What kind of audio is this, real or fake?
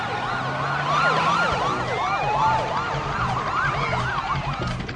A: real